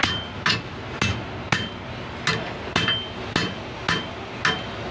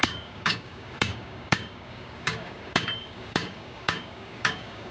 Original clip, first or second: first